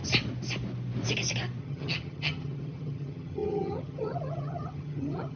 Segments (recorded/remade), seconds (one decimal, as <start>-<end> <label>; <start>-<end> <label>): 0.0-1.6 recorded; 1.6-5.4 remade